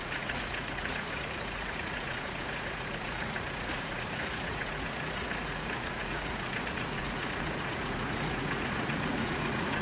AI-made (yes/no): yes